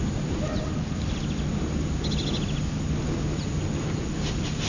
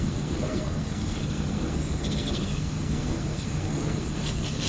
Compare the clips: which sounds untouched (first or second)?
first